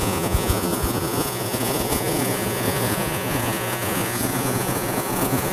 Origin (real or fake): fake